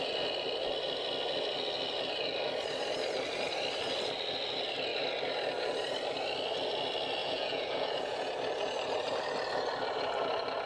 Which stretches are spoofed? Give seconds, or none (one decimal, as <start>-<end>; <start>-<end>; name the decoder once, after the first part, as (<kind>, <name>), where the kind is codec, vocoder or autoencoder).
7.2-8.3 (vocoder, Vocos)

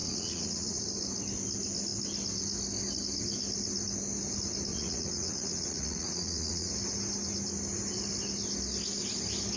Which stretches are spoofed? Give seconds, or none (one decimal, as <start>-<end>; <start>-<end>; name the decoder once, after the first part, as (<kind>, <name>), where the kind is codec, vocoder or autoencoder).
0.0-0.8 (vocoder, Vocos); 4.7-6.7

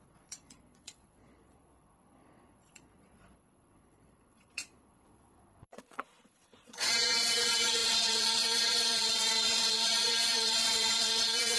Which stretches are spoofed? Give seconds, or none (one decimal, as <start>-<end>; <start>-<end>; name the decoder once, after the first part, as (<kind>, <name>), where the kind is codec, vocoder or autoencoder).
0.0-11.6 (vocoder, Vocos)